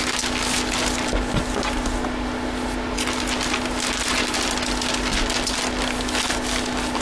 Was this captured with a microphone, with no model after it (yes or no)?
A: yes